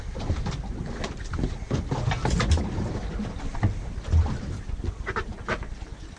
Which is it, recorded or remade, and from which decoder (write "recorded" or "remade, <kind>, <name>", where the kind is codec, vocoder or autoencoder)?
recorded